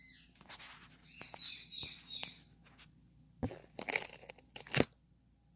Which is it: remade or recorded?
recorded